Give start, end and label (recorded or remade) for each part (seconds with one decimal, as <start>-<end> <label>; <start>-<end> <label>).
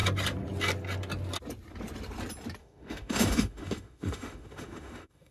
0.0-2.6 recorded; 2.6-5.3 remade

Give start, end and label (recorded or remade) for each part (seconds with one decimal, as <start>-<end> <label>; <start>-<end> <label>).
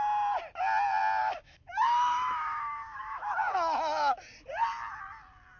0.0-1.2 recorded; 1.2-3.3 remade; 3.3-5.6 recorded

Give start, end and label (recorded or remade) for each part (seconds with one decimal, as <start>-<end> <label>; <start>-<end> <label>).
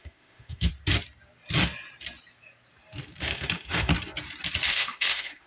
0.0-0.7 remade; 0.7-3.2 recorded; 3.2-3.9 remade; 3.9-4.7 recorded; 4.7-5.5 remade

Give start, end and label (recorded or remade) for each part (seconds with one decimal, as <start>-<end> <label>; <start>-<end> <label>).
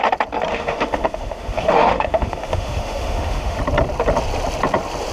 0.0-0.5 recorded; 0.5-3.6 remade; 3.6-5.1 recorded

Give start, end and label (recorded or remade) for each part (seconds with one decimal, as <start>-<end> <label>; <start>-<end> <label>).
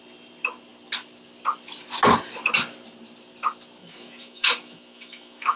0.0-3.8 recorded; 3.8-5.6 remade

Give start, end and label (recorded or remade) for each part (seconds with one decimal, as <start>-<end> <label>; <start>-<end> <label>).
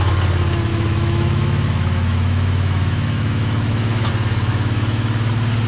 0.0-0.7 recorded; 0.7-4.1 remade; 4.1-4.5 recorded; 4.5-5.3 remade; 5.3-5.7 recorded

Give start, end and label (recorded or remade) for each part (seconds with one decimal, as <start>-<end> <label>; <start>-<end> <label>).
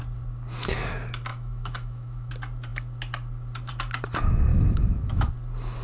0.0-1.3 recorded; 1.3-2.3 remade; 2.3-4.5 recorded; 4.5-5.3 remade; 5.3-5.8 recorded